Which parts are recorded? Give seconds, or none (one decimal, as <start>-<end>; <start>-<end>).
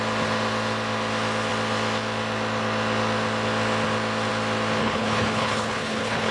0.0-4.8